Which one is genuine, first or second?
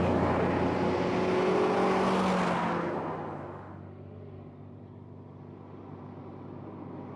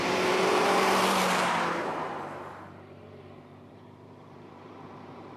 first